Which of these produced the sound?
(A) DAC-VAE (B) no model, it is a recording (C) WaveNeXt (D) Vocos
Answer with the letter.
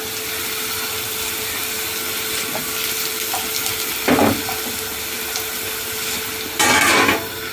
B